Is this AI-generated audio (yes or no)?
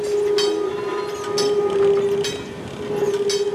no